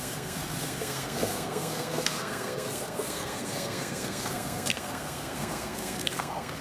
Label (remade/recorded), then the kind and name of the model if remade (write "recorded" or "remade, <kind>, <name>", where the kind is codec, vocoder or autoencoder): remade, codec, SNAC